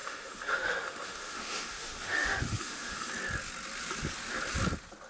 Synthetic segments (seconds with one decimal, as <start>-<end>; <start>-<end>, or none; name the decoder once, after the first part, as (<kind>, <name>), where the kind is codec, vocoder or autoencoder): 0.0-3.1 (autoencoder, DAC-VAE)